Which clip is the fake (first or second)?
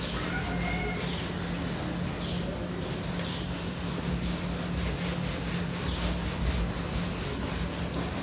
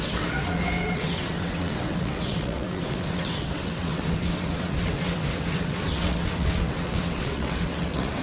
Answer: second